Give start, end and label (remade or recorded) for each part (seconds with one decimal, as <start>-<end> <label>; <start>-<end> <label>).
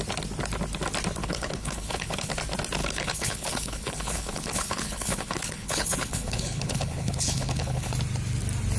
0.0-1.2 recorded; 1.2-2.3 remade; 2.3-2.8 recorded; 2.8-7.9 remade; 7.9-8.8 recorded